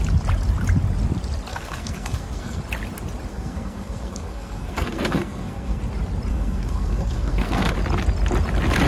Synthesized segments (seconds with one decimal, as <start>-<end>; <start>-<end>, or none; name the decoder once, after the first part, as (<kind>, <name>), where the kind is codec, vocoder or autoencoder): 1.5-2.6 (codec, SNAC); 3.3-5.8; 6.3-7.7